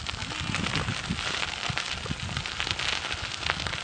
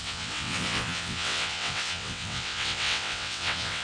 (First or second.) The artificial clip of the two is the second